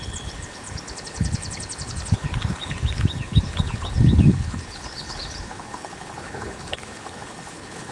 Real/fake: fake